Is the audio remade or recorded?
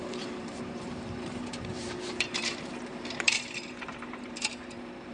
remade